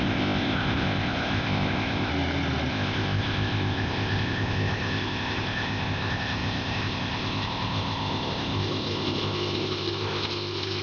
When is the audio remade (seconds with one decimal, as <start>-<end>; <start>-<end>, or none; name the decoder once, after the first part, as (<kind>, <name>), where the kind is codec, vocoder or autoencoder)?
0.0-2.1 (codec, ZipCodec); 2.7-10.8